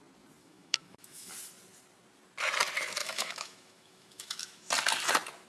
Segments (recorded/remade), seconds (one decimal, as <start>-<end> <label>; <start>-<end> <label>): 0.0-0.4 recorded; 0.4-1.3 remade; 1.3-3.0 recorded; 3.0-4.7 remade; 4.7-5.5 recorded